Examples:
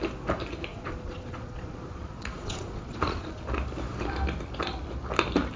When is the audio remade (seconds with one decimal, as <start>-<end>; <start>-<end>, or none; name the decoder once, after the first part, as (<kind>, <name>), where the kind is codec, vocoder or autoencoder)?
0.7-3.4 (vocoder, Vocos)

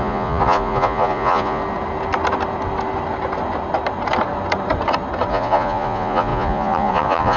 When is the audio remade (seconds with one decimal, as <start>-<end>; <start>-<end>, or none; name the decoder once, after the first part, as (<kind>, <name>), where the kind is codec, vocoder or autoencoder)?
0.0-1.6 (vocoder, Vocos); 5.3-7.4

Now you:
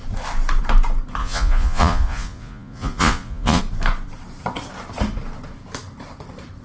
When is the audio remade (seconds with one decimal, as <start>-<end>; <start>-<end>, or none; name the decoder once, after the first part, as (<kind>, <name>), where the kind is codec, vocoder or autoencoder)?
1.2-3.6 (vocoder, Vocos)